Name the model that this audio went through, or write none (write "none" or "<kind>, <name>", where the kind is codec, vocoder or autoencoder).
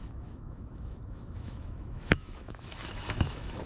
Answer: autoencoder, DAC-VAE